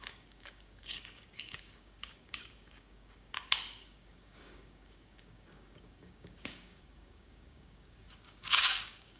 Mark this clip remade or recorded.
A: remade